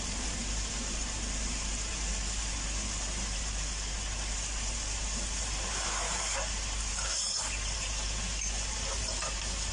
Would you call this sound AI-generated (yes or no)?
yes